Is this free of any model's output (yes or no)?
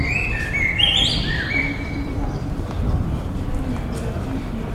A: no